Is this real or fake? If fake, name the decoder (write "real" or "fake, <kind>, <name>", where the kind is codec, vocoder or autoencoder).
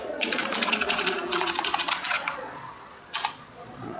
fake, vocoder, Vocos